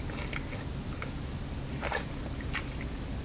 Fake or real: real